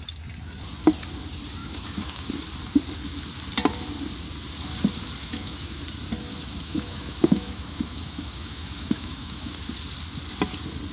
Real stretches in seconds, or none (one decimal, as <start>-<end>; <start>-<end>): 0.0-1.6; 2.3-5.2; 5.8-6.3; 9.6-10.9